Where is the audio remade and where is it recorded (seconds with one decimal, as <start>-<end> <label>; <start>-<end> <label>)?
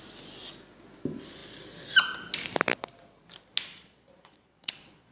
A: 0.0-3.7 recorded; 3.7-5.1 remade